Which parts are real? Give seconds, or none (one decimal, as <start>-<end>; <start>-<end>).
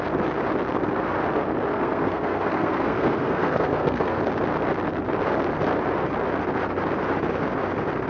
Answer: 0.0-1.7; 4.2-8.1